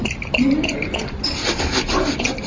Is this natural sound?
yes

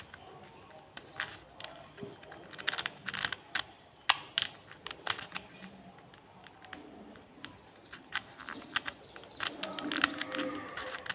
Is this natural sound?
yes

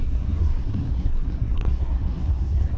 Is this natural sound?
no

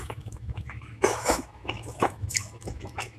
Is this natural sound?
no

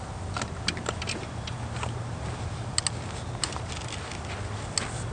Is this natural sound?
yes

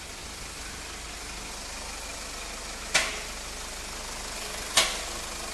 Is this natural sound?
yes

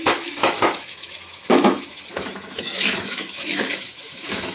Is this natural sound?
no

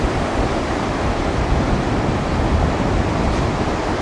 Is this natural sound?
yes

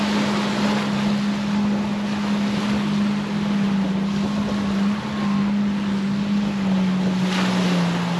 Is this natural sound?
yes